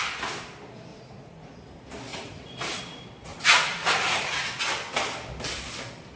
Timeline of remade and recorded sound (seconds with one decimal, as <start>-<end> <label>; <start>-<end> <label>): 0.0-0.9 recorded; 0.9-1.5 remade; 1.5-2.1 recorded; 2.1-2.8 remade; 2.8-3.3 recorded; 3.3-4.6 remade; 4.6-6.2 recorded